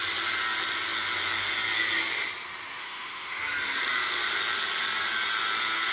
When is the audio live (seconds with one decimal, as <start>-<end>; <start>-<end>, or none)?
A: 0.0-2.8; 3.4-5.9